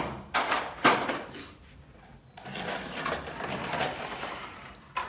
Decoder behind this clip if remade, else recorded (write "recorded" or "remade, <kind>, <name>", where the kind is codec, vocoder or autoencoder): recorded